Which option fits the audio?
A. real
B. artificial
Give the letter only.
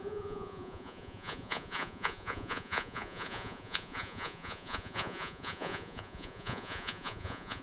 B